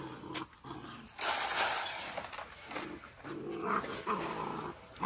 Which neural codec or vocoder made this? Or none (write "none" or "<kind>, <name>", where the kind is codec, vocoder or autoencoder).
none